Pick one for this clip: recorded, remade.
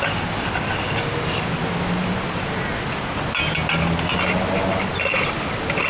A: recorded